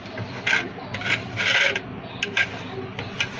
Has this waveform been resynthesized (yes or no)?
no